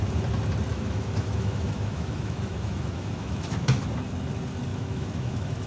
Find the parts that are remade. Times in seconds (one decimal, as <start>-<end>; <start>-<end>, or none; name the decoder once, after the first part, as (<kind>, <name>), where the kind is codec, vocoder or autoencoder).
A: 0.7-3.8 (autoencoder, DAC-VAE); 4.7-5.7